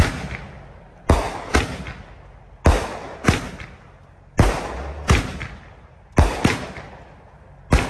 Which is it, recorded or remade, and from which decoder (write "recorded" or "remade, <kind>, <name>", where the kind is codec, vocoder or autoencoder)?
recorded